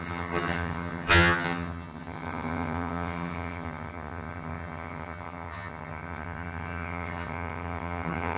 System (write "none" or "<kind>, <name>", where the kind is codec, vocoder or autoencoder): vocoder, HiFi-GAN